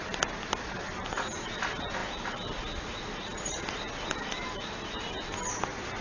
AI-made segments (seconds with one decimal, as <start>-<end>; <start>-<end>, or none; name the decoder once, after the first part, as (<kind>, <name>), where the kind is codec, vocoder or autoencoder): none